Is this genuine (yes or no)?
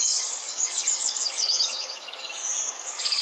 no